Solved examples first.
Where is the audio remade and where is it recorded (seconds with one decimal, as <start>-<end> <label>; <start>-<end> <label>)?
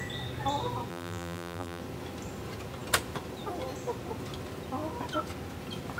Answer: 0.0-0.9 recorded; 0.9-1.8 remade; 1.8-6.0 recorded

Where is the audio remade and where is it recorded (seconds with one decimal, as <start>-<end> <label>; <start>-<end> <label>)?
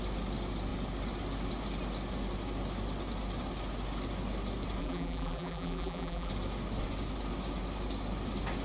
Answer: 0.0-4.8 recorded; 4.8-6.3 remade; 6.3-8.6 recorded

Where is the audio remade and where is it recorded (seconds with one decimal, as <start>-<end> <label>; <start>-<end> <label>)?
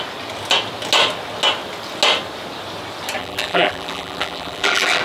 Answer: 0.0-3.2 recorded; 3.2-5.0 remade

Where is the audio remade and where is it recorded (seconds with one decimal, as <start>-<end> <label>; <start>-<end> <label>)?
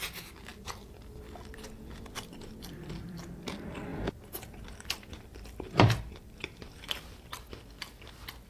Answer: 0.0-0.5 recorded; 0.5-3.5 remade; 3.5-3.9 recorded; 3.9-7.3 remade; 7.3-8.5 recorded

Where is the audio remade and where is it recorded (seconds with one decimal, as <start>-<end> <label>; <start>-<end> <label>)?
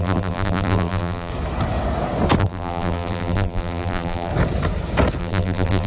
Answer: 0.0-1.3 remade; 1.3-2.4 recorded; 2.4-4.3 remade; 4.3-5.2 recorded; 5.2-5.9 remade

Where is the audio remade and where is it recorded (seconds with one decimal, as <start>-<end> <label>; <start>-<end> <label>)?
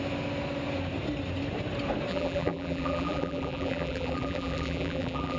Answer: 0.0-2.1 recorded; 2.1-5.4 remade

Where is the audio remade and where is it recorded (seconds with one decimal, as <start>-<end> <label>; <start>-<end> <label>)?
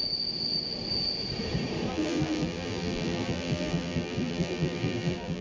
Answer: 0.0-1.9 recorded; 1.9-5.4 remade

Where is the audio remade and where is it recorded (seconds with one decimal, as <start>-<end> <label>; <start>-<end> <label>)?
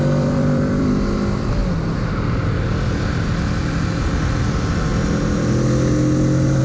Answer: 0.0-1.6 remade; 1.6-4.1 recorded; 4.1-4.9 remade; 4.9-6.6 recorded